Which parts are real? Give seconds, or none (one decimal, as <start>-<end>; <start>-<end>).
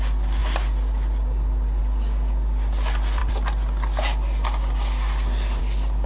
0.0-6.1